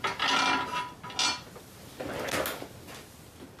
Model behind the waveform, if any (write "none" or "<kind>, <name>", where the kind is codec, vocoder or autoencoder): none